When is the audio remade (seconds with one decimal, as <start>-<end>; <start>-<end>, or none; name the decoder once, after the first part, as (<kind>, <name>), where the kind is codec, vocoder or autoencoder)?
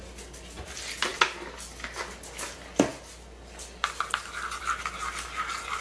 none